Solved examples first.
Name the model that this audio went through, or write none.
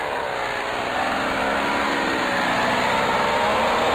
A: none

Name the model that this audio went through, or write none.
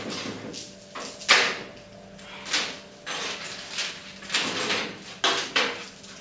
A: none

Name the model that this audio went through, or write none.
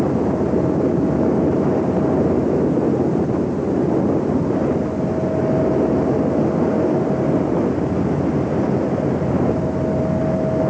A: none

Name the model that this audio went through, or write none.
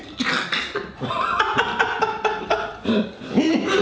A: none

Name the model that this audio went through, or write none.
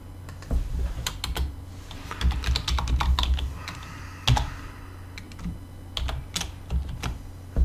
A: none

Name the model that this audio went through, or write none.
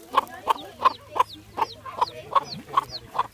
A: none